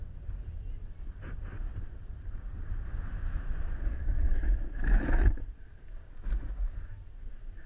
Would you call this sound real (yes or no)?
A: no